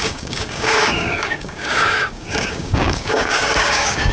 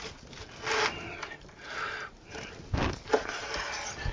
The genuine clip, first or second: second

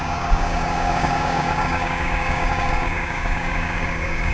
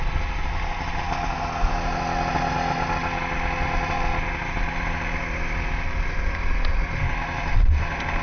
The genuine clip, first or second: second